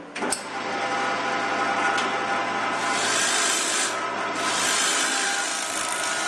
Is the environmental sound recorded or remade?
recorded